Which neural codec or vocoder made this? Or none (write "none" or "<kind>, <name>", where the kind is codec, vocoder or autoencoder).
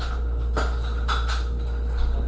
none